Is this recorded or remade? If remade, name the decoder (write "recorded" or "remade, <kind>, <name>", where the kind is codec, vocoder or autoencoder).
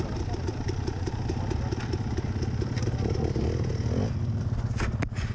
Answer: recorded